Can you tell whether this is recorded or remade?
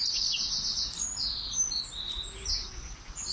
recorded